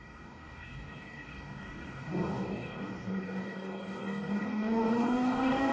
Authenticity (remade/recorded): remade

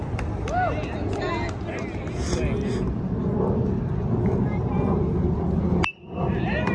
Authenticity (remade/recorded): recorded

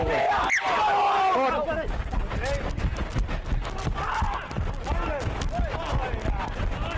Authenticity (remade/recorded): recorded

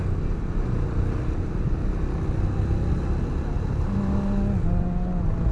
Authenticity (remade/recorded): recorded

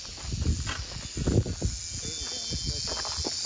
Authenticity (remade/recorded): recorded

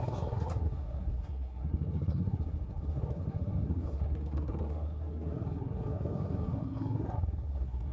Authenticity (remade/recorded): remade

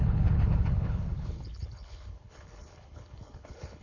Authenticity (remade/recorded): remade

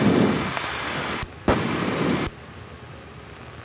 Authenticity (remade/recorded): recorded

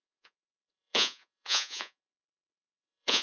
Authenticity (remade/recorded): remade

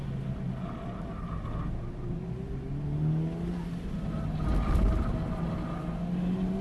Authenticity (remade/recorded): recorded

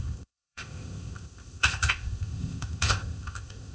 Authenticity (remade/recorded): remade